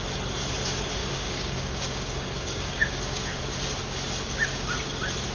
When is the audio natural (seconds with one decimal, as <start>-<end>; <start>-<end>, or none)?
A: 0.0-1.0; 3.4-5.3